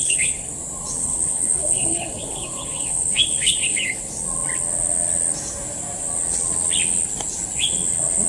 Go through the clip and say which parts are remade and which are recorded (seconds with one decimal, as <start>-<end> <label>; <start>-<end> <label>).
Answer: 0.0-0.5 remade; 0.5-1.0 recorded; 1.0-4.0 remade; 4.0-8.3 recorded

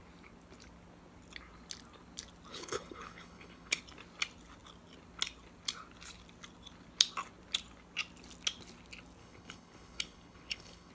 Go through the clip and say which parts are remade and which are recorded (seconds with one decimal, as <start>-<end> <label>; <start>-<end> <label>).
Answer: 0.0-2.5 recorded; 2.5-3.8 remade; 3.8-9.2 recorded; 9.2-10.9 remade